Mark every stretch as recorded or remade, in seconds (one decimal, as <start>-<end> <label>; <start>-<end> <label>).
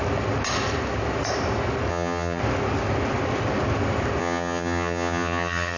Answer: 0.0-1.9 recorded; 1.9-2.4 remade; 2.4-4.2 recorded; 4.2-5.8 remade